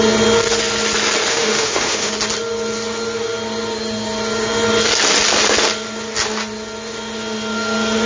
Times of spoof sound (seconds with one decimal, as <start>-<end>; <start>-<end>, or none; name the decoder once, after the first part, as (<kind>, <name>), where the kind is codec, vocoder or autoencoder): 1.3-2.1 (autoencoder, DAC-VAE)